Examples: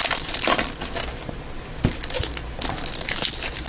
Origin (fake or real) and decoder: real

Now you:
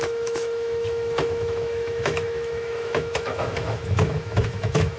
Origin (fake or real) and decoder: fake, autoencoder, DAC-VAE